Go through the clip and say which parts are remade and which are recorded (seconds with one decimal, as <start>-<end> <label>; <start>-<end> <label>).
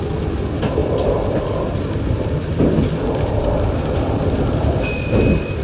0.0-0.8 recorded; 0.8-4.2 remade; 4.2-5.6 recorded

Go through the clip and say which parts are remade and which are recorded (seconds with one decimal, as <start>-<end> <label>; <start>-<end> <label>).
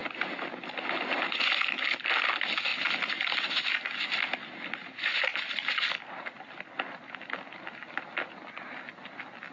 0.0-9.5 recorded